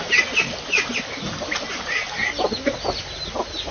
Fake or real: real